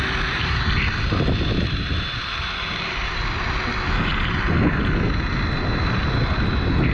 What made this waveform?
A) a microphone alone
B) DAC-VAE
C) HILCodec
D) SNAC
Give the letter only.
A